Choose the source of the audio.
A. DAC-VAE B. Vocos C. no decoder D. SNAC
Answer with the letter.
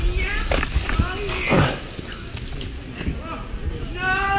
C